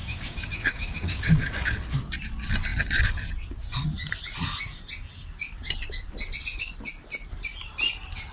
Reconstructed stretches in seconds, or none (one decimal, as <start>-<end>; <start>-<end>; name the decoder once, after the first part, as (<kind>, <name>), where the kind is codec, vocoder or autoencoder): 0.0-1.7 (codec, DAC)